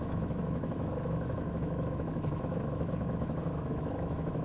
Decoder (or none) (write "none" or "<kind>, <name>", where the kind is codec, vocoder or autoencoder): autoencoder, DAC-VAE